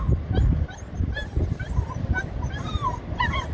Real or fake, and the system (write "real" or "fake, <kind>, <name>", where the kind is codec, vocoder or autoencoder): real